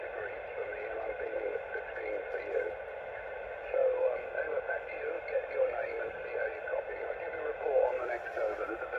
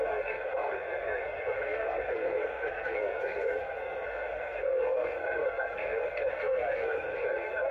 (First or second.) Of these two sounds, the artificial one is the second